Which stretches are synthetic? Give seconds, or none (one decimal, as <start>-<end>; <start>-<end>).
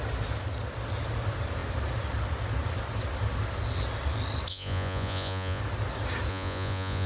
4.5-5.6; 6.3-7.1